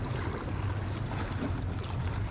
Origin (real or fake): real